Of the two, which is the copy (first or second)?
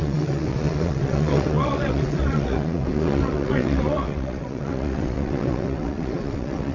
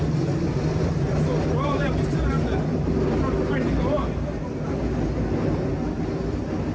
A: first